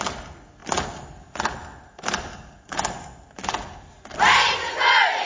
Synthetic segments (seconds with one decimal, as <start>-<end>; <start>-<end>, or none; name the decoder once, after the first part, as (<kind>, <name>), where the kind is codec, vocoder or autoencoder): none